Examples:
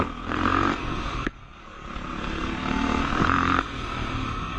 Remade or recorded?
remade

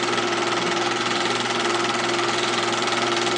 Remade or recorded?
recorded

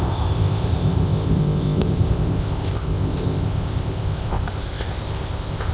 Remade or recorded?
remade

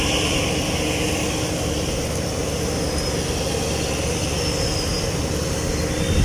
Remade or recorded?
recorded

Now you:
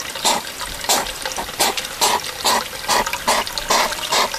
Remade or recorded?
recorded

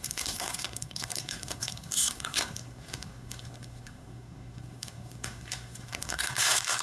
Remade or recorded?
remade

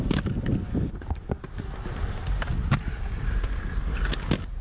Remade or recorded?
recorded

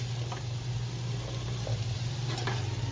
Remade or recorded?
recorded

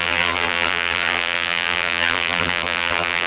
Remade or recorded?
remade